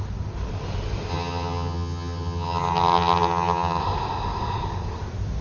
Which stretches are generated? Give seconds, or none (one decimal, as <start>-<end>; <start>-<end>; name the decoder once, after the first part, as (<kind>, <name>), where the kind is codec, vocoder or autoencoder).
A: 1.1-3.8 (vocoder, HiFi-GAN)